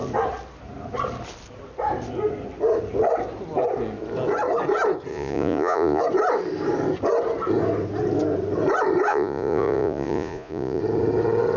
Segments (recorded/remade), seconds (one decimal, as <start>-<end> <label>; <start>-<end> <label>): 0.0-5.1 recorded; 5.1-6.0 remade; 6.0-9.1 recorded; 9.1-10.8 remade; 10.8-11.6 recorded